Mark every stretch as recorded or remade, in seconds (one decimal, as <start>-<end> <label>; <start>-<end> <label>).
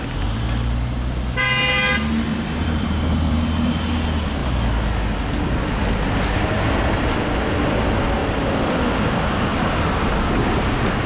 0.0-2.3 recorded; 2.3-3.7 remade; 3.7-11.1 recorded